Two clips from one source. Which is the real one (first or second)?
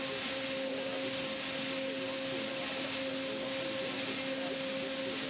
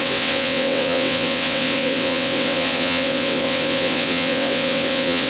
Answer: first